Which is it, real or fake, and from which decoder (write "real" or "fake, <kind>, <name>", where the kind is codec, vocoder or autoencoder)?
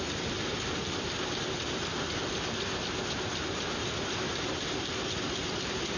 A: real